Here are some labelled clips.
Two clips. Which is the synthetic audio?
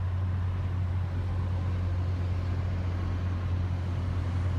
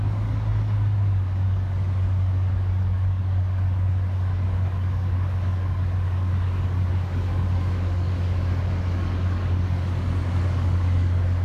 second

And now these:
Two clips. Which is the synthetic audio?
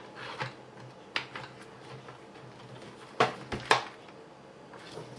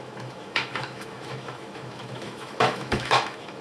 second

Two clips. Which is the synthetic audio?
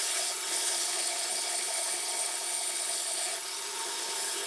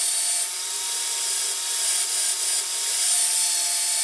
first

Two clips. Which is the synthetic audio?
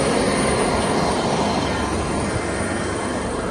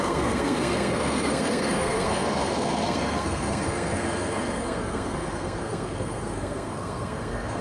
second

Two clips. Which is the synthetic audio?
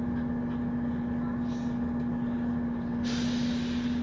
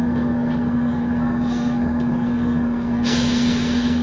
second